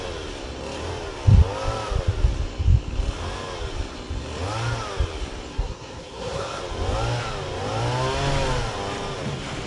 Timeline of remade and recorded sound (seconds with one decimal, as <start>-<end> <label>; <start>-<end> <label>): 0.0-5.5 recorded; 5.5-6.6 remade; 6.6-9.7 recorded